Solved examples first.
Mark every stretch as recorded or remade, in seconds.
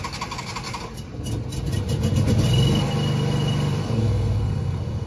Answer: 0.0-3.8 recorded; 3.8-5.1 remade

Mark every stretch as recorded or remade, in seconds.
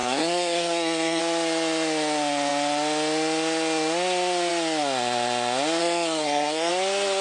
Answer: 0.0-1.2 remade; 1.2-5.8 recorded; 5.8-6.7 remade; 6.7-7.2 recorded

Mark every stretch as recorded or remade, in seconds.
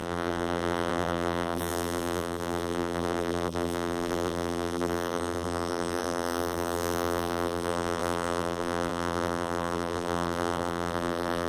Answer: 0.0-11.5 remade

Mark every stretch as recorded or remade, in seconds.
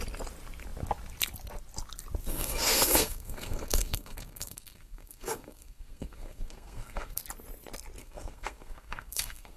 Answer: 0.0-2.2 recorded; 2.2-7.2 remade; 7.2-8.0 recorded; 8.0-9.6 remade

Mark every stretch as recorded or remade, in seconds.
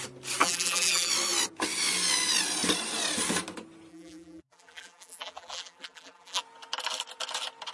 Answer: 0.0-0.4 recorded; 0.4-1.1 remade; 1.1-3.9 recorded; 3.9-6.4 remade; 6.4-7.7 recorded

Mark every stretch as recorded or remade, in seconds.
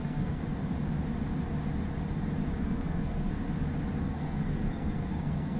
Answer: 0.0-0.4 remade; 0.4-2.6 recorded; 2.6-3.4 remade; 3.4-4.0 recorded; 4.0-5.6 remade